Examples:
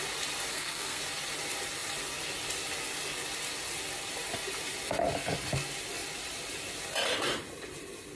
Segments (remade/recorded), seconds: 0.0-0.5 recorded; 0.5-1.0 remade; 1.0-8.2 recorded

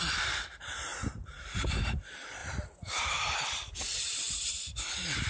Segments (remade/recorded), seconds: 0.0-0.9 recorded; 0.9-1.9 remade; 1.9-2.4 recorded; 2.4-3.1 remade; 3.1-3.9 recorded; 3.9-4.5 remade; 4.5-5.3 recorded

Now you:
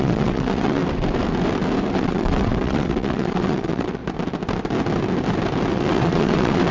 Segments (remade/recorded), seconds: 0.0-0.8 remade; 0.8-1.9 recorded; 1.9-4.0 remade; 4.0-5.7 recorded; 5.7-6.7 remade

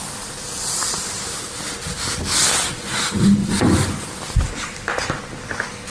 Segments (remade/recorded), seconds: 0.0-3.4 recorded; 3.4-4.1 remade; 4.1-5.9 recorded